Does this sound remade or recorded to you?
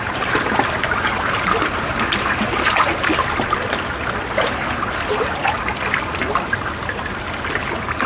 recorded